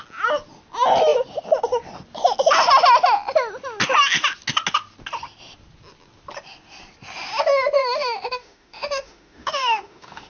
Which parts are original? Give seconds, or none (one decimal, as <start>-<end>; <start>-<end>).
0.0-7.8